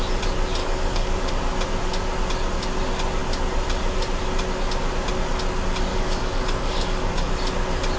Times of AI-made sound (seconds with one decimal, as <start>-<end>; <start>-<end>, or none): 0.6-1.3; 5.9-7.3

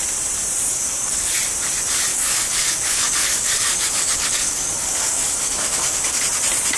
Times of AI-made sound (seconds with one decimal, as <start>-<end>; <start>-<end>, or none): 0.7-1.3; 2.1-6.2

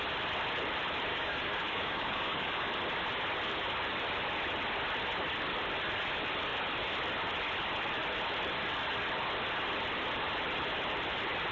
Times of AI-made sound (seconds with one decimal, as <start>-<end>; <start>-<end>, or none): 1.1-2.7

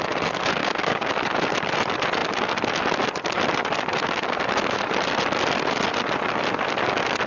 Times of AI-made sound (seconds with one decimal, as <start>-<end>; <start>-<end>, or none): 0.6-1.1

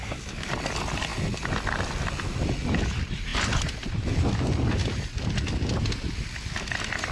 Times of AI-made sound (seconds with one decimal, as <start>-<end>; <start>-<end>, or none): 0.0-0.5

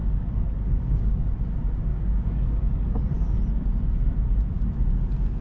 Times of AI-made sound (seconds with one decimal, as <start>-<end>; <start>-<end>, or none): 0.0-1.3; 1.9-3.4